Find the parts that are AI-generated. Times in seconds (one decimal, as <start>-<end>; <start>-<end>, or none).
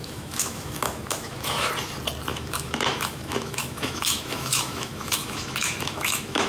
0.0-1.7; 2.3-6.5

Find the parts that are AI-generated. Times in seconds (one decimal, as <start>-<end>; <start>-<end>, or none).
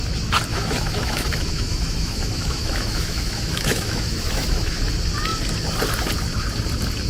0.5-4.8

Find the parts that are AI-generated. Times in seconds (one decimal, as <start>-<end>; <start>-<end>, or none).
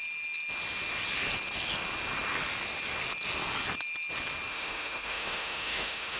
4.5-6.2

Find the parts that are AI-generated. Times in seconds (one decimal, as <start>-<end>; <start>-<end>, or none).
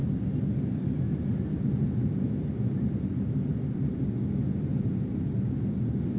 none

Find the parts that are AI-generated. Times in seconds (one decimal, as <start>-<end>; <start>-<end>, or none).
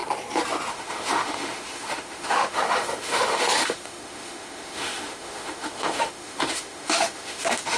0.7-7.8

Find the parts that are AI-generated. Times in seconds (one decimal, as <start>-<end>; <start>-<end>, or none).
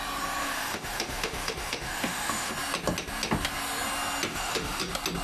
0.4-2.5; 4.3-4.8